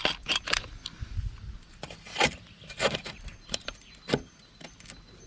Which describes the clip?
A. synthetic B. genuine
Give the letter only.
B